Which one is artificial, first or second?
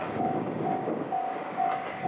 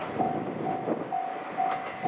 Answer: first